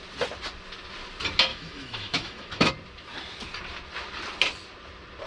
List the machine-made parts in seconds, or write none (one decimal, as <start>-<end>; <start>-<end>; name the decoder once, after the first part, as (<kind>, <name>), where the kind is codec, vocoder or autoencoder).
1.5-2.7 (autoencoder, DAC-VAE)